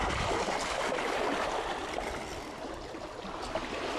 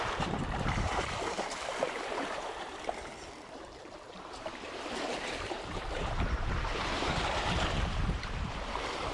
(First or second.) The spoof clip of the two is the second